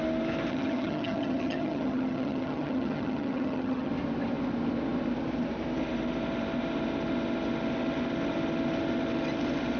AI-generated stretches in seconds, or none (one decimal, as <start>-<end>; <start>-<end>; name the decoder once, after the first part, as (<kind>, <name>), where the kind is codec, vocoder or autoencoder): 0.5-3.9 (vocoder, HiFi-GAN)